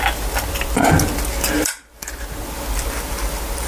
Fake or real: real